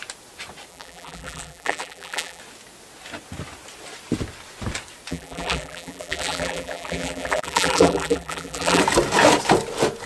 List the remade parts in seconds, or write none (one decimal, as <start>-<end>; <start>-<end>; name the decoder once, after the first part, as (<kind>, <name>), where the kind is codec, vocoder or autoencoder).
0.7-2.4 (vocoder, BigVGAN v2); 5.1-8.8